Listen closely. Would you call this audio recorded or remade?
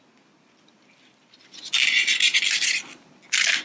recorded